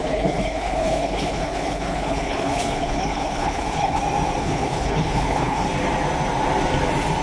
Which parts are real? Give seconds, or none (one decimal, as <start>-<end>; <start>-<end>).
4.0-4.4; 5.6-7.2